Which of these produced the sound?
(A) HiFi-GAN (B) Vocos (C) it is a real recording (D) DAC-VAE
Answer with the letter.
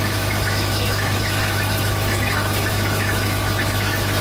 D